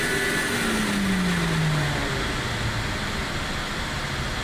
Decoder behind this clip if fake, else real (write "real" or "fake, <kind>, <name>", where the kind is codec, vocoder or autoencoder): real